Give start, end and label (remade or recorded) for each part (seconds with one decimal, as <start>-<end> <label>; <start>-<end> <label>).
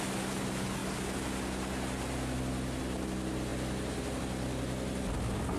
0.0-5.6 recorded